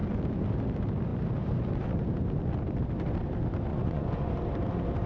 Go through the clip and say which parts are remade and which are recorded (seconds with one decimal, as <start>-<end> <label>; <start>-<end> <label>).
0.0-3.7 recorded; 3.7-4.3 remade; 4.3-5.1 recorded